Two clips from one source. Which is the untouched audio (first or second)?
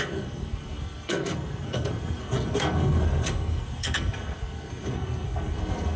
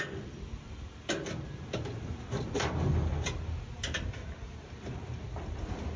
second